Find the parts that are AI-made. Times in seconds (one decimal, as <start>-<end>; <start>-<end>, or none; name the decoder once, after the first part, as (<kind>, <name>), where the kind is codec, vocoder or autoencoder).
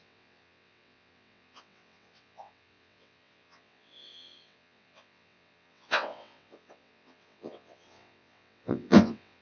0.0-9.4 (vocoder, WaveNeXt)